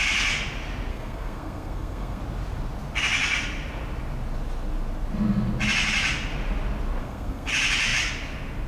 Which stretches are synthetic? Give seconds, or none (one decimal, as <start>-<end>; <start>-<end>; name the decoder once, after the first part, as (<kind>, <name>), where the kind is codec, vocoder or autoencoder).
0.9-2.2 (codec, SNAC); 7.0-7.5